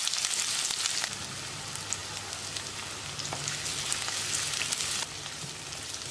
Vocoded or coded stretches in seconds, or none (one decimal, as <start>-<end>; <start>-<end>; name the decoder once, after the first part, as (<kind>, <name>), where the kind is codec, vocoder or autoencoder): none